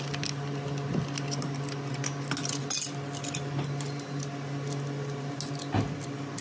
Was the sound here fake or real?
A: real